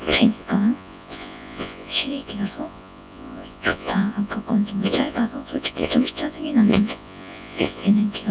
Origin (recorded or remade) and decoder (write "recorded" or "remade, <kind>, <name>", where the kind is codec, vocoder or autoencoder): remade, vocoder, Vocos